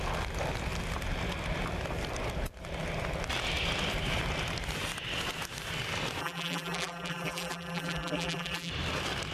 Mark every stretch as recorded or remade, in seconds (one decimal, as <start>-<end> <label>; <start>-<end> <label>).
0.0-6.2 recorded; 6.2-8.7 remade; 8.7-9.3 recorded